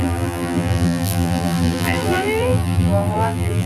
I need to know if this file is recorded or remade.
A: remade